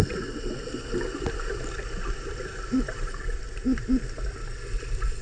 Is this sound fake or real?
real